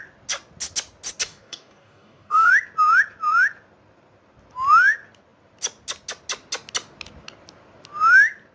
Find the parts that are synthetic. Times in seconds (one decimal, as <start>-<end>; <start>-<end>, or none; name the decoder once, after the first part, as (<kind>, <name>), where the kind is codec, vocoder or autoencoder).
1.2-2.5 (codec, DAC)